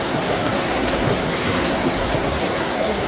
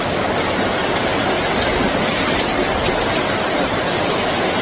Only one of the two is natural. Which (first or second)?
second